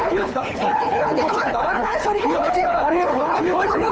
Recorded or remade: remade